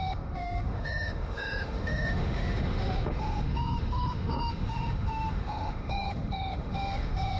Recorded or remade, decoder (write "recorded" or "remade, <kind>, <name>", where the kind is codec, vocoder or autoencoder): remade, autoencoder, DAC-VAE